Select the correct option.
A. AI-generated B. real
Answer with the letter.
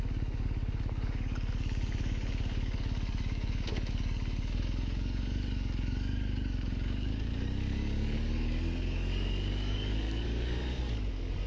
A